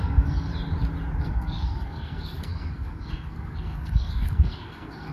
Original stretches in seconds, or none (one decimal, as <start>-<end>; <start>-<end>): 0.5-1.2